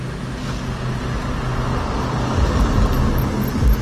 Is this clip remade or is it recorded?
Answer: recorded